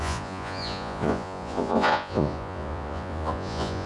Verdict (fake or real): fake